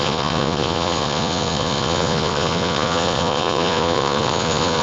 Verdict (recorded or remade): remade